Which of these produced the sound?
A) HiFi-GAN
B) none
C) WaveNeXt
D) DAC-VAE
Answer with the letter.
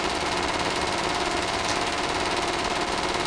B